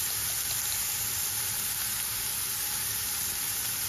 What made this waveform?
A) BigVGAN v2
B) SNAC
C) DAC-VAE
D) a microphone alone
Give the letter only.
D